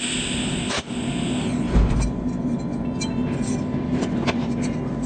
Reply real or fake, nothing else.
real